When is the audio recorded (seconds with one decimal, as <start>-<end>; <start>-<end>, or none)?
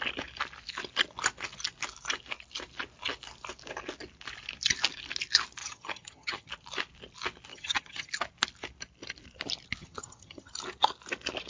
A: 0.0-5.6; 6.5-7.5; 8.1-9.8; 10.5-11.5